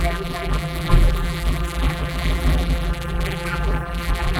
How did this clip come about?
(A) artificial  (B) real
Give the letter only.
A